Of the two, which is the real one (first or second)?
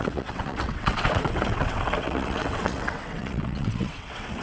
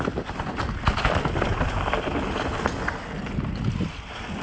second